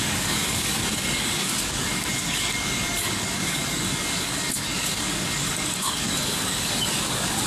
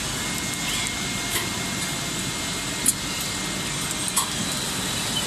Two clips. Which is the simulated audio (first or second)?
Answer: first